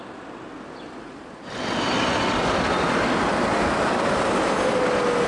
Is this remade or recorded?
recorded